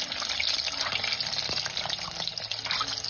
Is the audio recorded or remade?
recorded